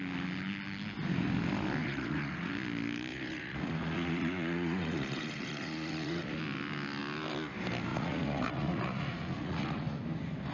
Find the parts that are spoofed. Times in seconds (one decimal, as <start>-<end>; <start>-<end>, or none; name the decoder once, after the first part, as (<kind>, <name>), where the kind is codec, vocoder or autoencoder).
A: 1.8-2.5 (vocoder, Vocos); 3.1-6.4; 7.9-10.0